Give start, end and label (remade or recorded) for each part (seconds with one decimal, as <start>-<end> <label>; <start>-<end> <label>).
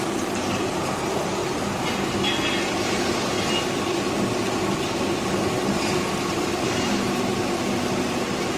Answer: 0.0-1.4 remade; 1.4-5.7 recorded; 5.7-7.3 remade; 7.3-8.0 recorded; 8.0-8.6 remade